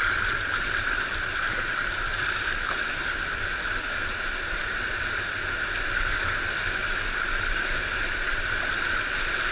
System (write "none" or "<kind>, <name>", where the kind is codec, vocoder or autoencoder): none